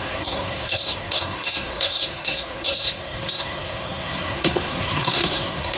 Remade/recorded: remade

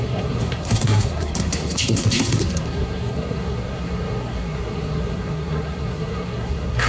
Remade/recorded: remade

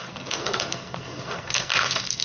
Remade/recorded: remade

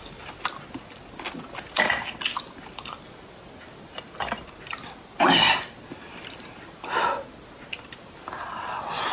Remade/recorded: recorded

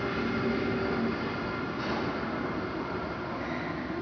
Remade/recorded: recorded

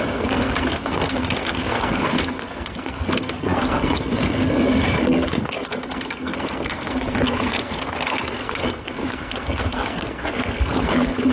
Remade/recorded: remade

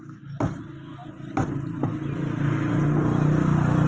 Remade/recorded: recorded